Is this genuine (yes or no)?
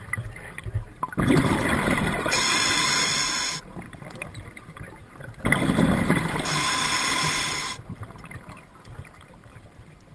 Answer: yes